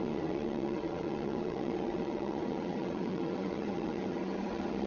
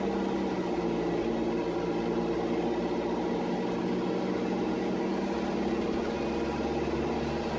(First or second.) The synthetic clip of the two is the first